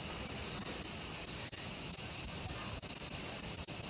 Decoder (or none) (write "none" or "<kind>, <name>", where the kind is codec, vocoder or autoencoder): none